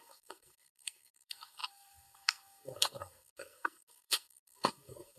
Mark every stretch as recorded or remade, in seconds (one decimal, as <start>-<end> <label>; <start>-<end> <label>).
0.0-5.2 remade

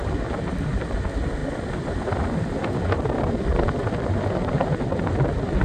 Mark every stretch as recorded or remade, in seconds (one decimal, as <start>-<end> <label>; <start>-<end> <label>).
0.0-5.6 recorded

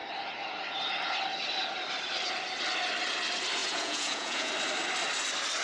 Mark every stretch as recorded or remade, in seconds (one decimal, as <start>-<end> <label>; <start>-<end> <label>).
0.0-3.6 recorded; 3.6-4.5 remade; 4.5-5.6 recorded

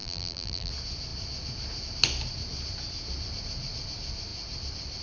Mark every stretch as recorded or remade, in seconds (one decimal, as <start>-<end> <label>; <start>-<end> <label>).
0.0-0.7 remade; 0.7-5.0 recorded